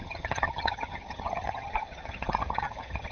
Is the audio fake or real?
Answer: fake